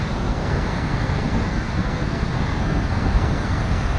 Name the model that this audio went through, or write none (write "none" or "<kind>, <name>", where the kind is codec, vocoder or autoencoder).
codec, SNAC